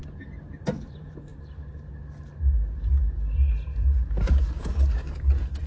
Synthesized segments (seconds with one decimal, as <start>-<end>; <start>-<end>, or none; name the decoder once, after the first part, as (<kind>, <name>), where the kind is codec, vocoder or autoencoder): 0.7-1.3 (vocoder, BigVGAN v2); 4.0-5.7